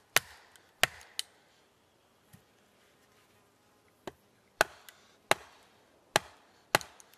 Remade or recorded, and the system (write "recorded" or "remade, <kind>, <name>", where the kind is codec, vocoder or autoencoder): recorded